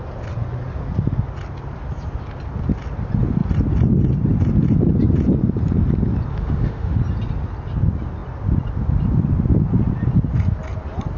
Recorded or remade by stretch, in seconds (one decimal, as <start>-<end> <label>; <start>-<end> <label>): 0.0-6.3 recorded; 6.3-7.0 remade; 7.0-11.2 recorded